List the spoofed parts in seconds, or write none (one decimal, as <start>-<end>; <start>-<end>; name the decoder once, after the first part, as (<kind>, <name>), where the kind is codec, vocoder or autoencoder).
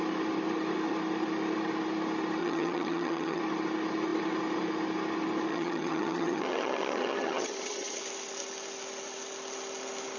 2.4-3.4 (vocoder, HiFi-GAN); 5.5-8.0